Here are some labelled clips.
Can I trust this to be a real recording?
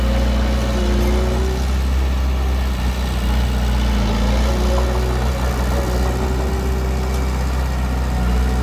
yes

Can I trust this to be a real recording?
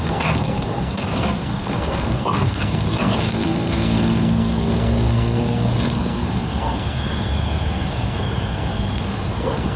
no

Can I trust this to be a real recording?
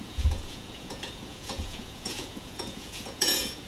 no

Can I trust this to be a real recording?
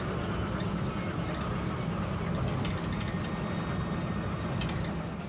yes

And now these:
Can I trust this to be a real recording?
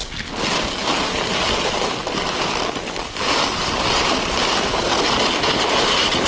yes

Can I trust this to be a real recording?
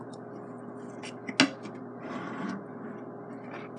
yes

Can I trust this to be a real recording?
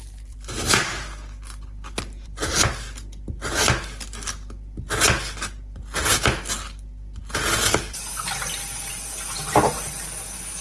yes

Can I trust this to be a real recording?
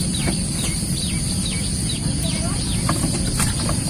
yes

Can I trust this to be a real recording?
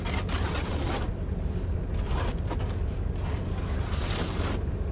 yes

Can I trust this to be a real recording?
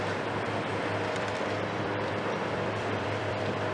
no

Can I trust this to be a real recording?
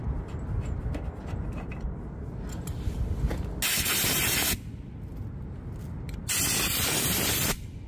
yes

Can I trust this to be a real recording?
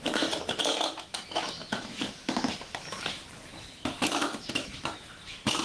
no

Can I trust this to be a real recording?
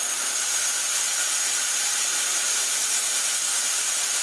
yes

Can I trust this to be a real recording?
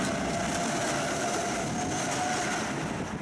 yes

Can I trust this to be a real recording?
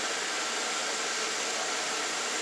yes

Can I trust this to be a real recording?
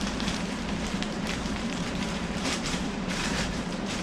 no